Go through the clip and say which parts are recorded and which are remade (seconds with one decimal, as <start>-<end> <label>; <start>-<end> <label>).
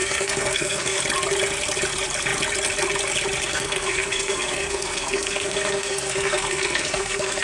0.0-1.0 remade; 1.0-3.5 recorded; 3.5-7.4 remade